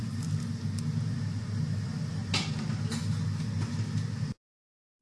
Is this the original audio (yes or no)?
yes